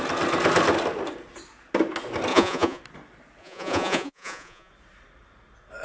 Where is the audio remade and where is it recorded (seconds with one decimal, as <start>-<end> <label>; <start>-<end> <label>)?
0.0-2.3 recorded; 2.3-2.8 remade; 2.8-3.4 recorded; 3.4-4.7 remade; 4.7-5.8 recorded